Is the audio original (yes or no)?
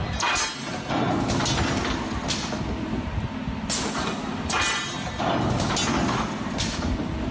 yes